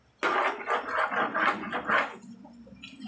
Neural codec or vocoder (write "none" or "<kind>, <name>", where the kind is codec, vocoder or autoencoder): none